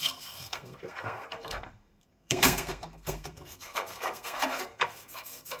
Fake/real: fake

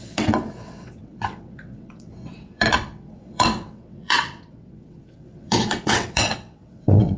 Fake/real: fake